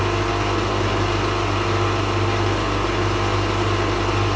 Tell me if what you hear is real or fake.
real